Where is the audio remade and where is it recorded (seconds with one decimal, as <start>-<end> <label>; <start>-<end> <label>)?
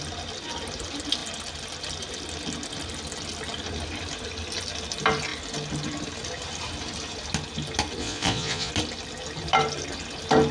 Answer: 0.0-8.0 recorded; 8.0-8.7 remade; 8.7-10.5 recorded